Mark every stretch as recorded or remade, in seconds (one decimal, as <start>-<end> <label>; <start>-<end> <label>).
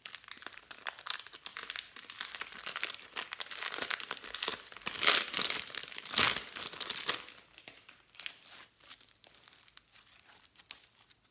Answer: 0.0-11.3 recorded